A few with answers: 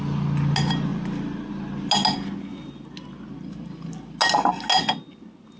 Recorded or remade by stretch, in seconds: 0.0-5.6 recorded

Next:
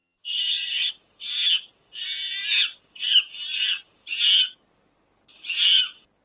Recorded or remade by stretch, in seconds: 0.0-0.9 remade; 0.9-6.2 recorded